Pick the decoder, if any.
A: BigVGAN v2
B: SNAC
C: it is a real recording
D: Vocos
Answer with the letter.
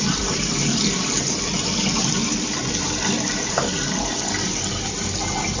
A